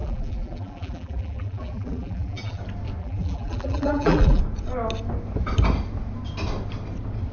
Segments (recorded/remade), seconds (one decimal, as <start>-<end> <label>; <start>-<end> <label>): 0.0-2.6 remade; 2.6-3.0 recorded; 3.0-4.4 remade; 4.4-7.3 recorded